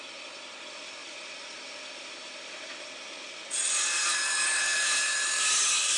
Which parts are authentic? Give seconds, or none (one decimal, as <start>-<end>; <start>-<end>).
0.0-6.0

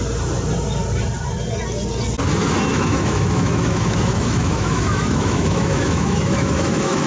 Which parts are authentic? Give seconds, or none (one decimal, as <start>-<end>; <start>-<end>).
0.0-2.7

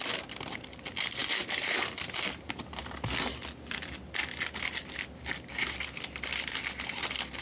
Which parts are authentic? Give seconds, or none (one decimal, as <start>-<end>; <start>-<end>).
0.0-7.4